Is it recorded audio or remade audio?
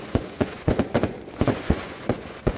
remade